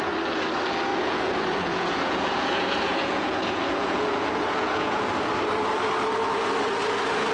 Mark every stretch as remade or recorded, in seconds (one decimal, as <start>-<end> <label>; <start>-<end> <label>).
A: 0.0-0.9 recorded; 0.9-5.3 remade; 5.3-7.3 recorded